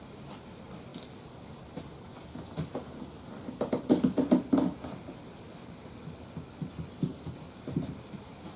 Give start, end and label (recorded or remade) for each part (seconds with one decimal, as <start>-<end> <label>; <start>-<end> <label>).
0.0-8.6 recorded